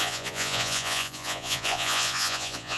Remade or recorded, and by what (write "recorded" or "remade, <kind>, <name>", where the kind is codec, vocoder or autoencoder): remade, vocoder, Vocos